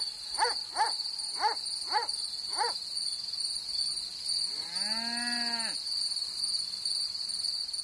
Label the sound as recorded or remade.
recorded